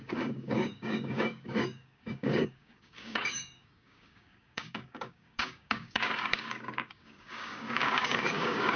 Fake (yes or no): yes